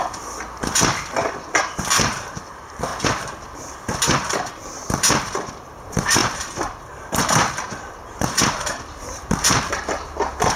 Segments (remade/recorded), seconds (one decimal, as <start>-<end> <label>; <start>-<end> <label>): 0.0-1.6 recorded; 1.6-2.9 remade; 2.9-4.9 recorded; 4.9-10.6 remade